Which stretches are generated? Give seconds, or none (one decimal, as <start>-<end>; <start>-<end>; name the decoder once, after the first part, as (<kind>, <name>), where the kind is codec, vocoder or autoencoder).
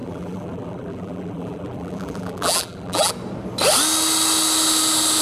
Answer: 0.0-3.1 (vocoder, BigVGAN v2)